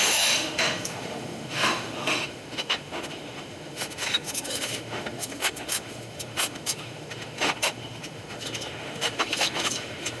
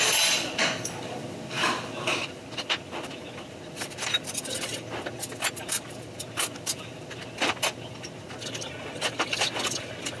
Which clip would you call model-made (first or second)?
first